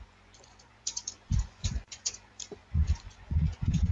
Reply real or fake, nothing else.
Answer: fake